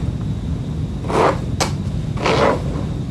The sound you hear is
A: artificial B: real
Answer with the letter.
B